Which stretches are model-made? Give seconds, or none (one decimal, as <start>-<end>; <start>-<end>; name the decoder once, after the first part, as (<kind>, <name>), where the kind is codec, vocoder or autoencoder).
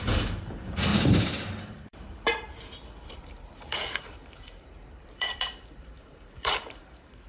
0.0-0.9 (vocoder, BigVGAN v2); 1.6-7.3